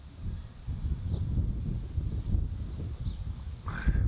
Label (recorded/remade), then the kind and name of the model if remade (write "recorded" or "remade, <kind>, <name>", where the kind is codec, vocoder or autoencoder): recorded